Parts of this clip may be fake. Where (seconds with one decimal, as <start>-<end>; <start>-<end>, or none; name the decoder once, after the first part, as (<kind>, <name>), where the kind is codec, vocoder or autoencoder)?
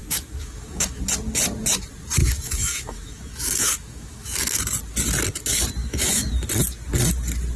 0.0-1.0 (autoencoder, DAC-VAE); 2.2-4.6; 5.8-6.3